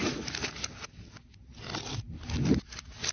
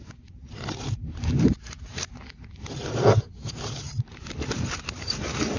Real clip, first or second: first